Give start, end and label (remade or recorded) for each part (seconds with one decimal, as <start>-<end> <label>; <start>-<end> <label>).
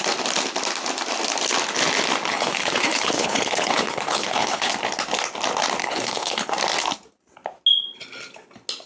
0.0-2.3 recorded; 2.3-4.7 remade; 4.7-5.8 recorded; 5.8-6.5 remade; 6.5-8.9 recorded